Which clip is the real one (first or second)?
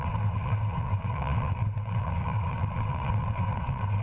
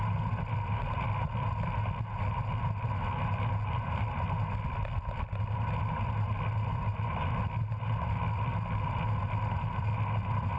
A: second